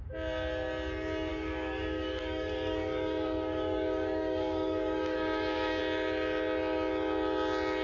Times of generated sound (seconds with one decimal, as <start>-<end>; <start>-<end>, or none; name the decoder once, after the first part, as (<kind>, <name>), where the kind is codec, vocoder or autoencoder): 1.3-5.8 (codec, DAC)